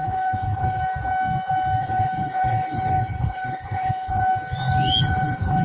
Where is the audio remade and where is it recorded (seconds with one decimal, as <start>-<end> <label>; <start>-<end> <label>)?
0.0-0.8 remade; 0.8-1.8 recorded; 1.8-4.2 remade; 4.2-5.0 recorded; 5.0-5.6 remade